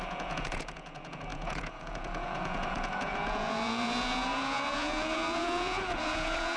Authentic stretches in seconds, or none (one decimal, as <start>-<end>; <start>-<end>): none